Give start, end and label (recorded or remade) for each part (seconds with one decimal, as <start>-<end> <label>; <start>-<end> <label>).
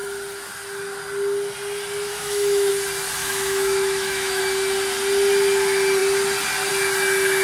0.0-2.1 recorded; 2.1-2.7 remade; 2.7-3.2 recorded; 3.2-4.4 remade; 4.4-7.4 recorded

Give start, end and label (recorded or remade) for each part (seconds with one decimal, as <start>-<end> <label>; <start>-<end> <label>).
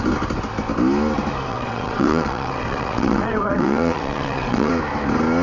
0.0-1.5 recorded; 1.5-4.7 remade; 4.7-5.4 recorded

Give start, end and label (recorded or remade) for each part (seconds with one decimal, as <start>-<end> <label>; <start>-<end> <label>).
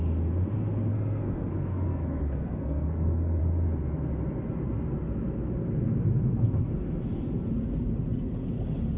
0.0-0.9 recorded; 0.9-3.4 remade; 3.4-9.0 recorded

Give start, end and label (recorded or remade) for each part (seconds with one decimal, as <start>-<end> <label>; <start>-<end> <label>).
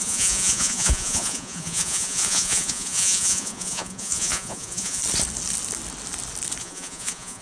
0.0-5.0 remade; 5.0-6.6 recorded; 6.6-7.4 remade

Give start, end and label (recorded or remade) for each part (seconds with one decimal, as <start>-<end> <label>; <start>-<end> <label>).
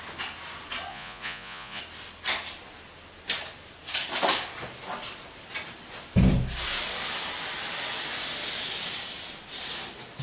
0.0-0.9 recorded; 0.9-1.8 remade; 1.8-10.2 recorded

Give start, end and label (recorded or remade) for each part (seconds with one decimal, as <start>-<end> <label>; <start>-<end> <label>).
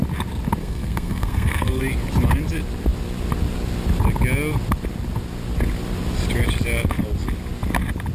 0.0-0.6 recorded; 0.6-1.8 remade; 1.8-8.1 recorded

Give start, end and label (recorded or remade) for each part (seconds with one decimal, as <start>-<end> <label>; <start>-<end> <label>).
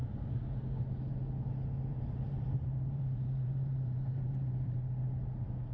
0.0-1.9 recorded; 1.9-4.8 remade; 4.8-5.7 recorded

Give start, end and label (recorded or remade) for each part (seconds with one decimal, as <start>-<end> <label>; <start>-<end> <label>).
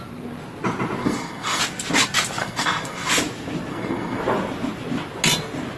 0.0-1.0 recorded; 1.0-1.6 remade; 1.6-2.4 recorded; 2.4-3.1 remade; 3.1-3.7 recorded; 3.7-4.2 remade; 4.2-5.8 recorded